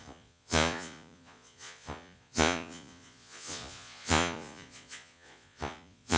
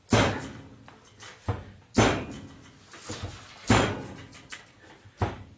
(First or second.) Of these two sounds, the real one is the second